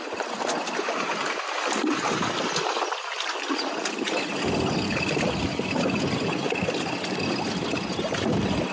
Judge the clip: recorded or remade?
recorded